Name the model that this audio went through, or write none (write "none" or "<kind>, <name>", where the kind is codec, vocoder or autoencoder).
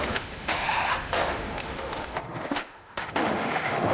autoencoder, DAC-VAE